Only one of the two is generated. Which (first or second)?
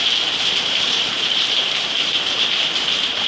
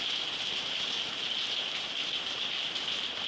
first